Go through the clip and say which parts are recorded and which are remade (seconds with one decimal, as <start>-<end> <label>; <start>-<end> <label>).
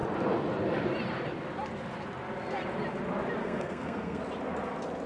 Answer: 0.0-3.4 recorded; 3.4-4.2 remade; 4.2-5.1 recorded